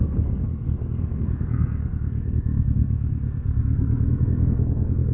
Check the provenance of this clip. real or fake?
fake